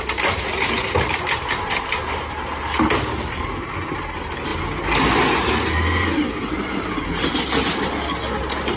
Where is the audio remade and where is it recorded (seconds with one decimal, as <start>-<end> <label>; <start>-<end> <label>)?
0.0-8.8 recorded